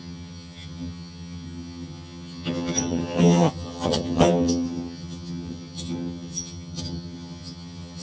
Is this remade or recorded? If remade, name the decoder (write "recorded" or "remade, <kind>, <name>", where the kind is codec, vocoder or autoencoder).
remade, vocoder, HiFi-GAN